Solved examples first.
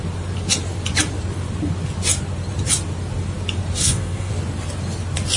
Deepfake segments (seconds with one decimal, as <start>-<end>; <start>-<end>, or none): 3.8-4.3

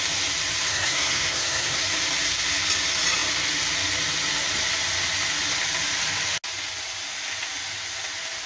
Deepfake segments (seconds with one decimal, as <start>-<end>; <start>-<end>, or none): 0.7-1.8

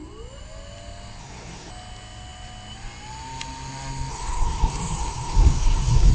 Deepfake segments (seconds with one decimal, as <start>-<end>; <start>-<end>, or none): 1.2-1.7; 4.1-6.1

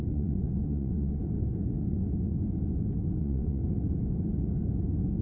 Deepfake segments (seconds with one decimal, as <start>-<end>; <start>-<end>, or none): 0.0-1.2; 3.2-3.6